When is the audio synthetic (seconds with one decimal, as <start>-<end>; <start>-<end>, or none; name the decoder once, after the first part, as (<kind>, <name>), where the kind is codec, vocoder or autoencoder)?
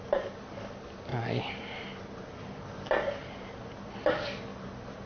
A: none